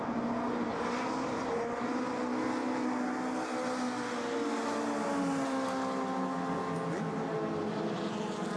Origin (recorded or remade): recorded